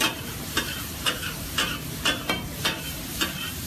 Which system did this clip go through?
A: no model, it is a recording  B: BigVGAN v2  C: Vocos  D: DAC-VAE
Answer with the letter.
B